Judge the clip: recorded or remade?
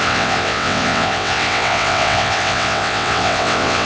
remade